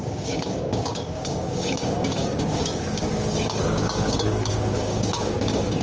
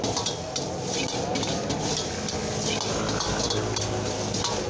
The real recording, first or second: second